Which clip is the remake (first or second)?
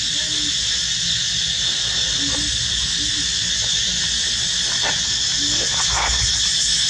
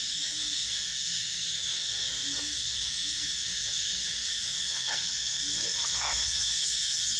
second